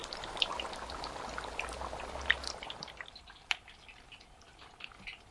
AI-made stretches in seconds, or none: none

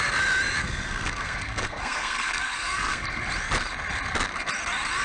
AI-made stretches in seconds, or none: 0.6-3.2